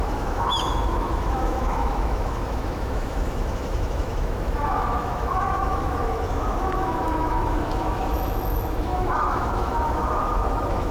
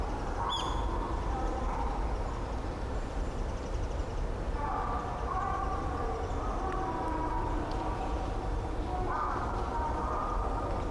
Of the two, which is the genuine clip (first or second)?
second